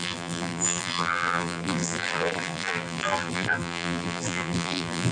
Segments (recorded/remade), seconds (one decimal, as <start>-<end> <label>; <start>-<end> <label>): 0.0-5.1 remade